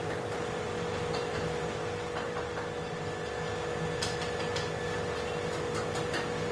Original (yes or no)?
yes